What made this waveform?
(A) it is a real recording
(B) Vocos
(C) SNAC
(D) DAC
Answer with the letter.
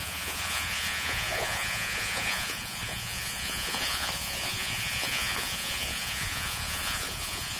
B